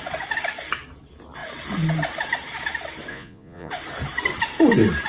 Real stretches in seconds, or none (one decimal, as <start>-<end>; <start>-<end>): 0.0-3.1; 3.7-5.1